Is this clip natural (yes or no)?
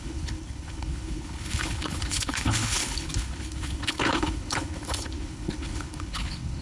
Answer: no